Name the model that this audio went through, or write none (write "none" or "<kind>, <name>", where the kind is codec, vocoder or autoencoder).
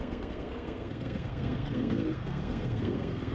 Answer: codec, SNAC